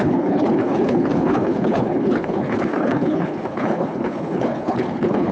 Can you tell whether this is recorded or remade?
remade